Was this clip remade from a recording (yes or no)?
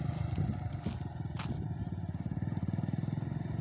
no